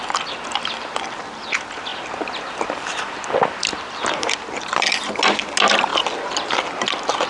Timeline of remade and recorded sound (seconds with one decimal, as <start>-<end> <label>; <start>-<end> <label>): 0.0-7.3 recorded